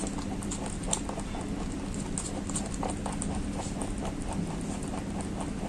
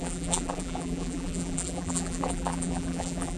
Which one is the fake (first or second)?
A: second